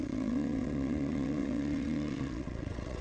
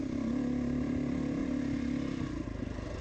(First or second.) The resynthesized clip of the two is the first